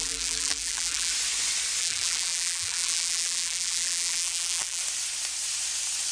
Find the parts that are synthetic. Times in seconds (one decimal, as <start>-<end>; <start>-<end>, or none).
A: 0.0-1.1; 1.8-4.8